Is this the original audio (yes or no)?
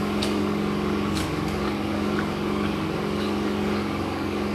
no